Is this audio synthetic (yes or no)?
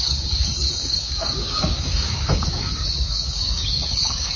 yes